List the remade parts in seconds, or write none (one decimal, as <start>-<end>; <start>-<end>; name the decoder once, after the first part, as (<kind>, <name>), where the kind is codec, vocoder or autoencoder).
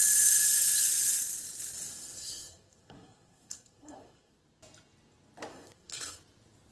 1.9-4.3 (codec, SNAC); 5.5-6.2